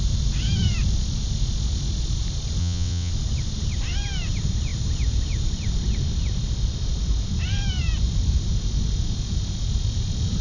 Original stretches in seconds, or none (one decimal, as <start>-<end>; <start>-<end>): 0.0-2.6; 3.1-10.4